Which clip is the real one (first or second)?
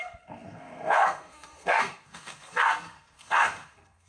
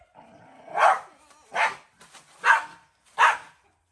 second